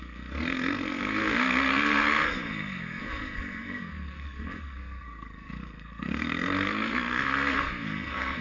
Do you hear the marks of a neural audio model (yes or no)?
yes